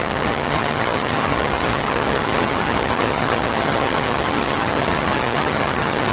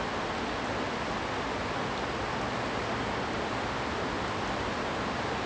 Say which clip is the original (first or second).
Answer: second